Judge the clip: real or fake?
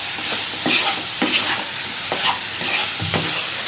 real